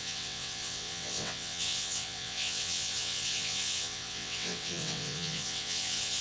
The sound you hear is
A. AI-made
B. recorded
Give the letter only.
A